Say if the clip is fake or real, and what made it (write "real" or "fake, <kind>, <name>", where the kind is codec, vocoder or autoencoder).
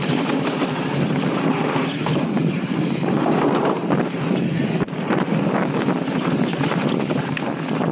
real